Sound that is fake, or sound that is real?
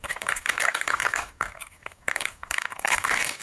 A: fake